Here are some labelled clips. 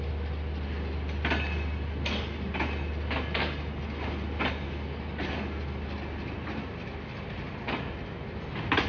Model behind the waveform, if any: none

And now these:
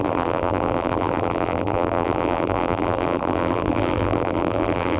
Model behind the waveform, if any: vocoder, BigVGAN v2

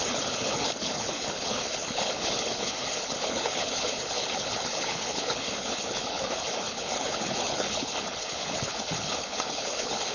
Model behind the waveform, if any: codec, HILCodec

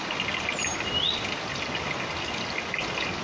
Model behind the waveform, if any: none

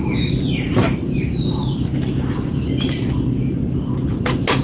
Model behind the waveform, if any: none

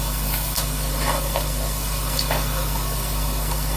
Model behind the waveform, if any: codec, SNAC